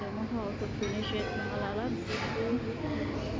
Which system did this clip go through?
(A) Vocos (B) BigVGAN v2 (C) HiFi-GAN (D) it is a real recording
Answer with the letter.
D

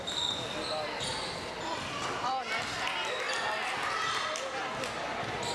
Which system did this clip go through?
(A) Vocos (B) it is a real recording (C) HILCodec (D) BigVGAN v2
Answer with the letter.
B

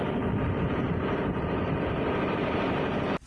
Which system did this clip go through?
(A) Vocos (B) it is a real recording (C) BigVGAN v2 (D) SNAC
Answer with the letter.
B